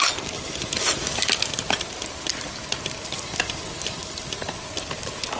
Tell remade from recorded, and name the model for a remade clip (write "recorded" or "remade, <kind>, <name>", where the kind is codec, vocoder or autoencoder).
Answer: recorded